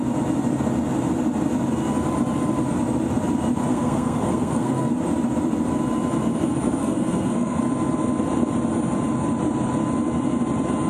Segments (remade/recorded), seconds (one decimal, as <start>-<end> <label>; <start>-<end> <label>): 0.0-3.7 recorded; 3.7-4.9 remade; 4.9-6.8 recorded; 6.8-7.6 remade; 7.6-10.9 recorded